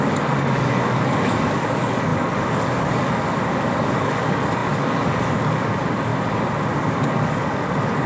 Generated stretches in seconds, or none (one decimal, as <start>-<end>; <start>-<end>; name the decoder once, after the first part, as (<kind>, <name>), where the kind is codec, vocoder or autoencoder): 0.0-6.1 (codec, DAC); 6.8-8.1